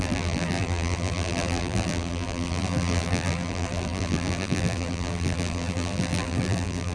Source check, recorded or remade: remade